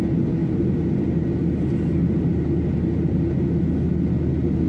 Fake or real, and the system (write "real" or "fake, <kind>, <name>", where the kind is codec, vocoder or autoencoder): real